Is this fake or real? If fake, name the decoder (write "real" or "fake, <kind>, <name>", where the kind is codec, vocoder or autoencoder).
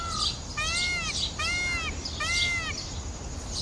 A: real